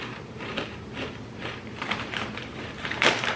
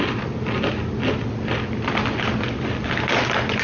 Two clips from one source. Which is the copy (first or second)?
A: first